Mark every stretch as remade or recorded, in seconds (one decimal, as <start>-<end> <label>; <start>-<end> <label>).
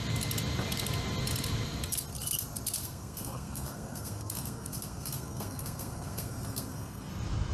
0.0-2.8 recorded; 2.8-7.1 remade; 7.1-7.5 recorded